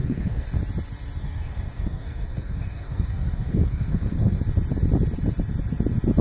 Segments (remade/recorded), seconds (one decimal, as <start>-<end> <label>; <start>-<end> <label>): 0.0-0.6 remade; 0.6-1.2 recorded; 1.2-4.4 remade; 4.4-6.2 recorded